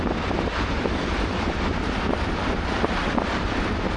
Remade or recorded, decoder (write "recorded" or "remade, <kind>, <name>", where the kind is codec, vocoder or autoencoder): recorded